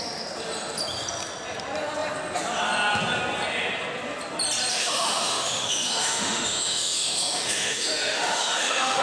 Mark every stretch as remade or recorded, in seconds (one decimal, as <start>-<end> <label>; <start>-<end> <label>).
0.0-4.7 recorded; 4.7-9.0 remade